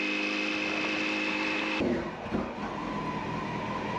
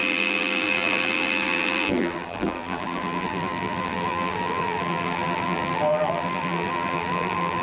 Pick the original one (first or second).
first